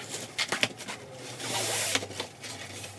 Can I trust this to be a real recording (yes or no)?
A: yes